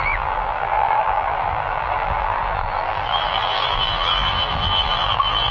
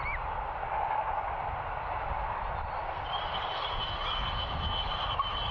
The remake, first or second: first